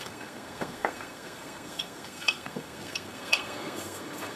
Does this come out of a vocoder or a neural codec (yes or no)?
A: yes